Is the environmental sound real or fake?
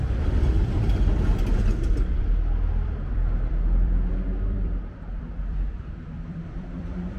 fake